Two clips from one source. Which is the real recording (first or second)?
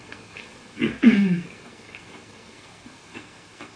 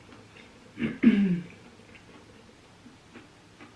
second